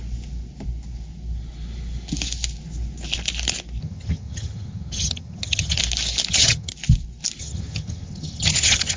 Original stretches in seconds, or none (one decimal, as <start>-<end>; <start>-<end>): 0.0-3.8; 5.8-6.3; 6.7-7.4